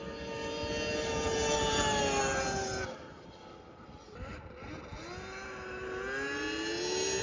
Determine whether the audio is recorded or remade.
recorded